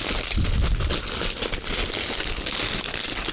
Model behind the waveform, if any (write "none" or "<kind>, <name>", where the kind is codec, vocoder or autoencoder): none